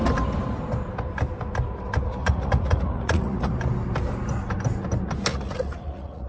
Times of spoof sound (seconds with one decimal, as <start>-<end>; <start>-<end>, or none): 2.2-3.5; 5.3-6.3